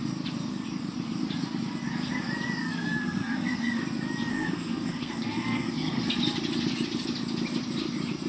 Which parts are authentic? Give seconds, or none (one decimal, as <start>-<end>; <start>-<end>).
0.0-2.6; 3.8-4.3; 6.2-8.3